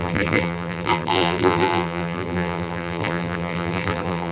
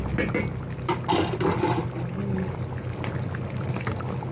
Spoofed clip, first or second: first